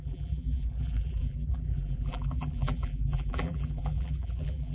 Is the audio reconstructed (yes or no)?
yes